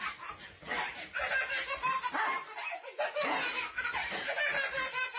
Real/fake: real